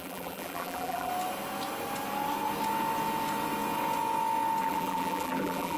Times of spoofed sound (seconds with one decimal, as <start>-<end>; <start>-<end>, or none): 0.0-1.1; 4.6-5.8